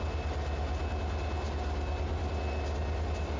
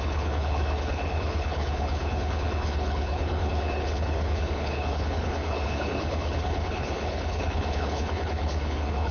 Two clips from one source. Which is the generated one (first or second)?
second